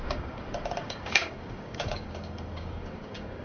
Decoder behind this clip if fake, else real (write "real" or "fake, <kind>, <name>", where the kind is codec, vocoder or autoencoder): fake, codec, DAC